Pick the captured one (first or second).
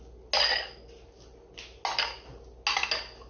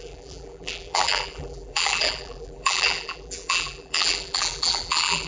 first